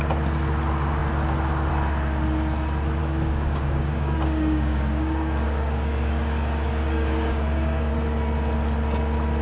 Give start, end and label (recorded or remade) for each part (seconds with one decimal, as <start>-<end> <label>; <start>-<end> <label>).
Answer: 0.0-3.0 recorded; 3.0-7.9 remade; 7.9-9.4 recorded